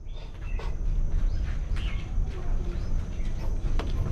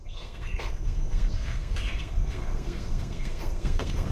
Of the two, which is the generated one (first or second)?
second